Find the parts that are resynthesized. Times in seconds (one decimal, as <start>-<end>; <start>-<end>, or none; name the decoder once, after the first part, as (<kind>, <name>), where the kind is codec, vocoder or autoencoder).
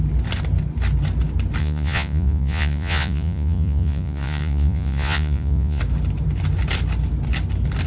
1.6-5.8 (vocoder, Vocos)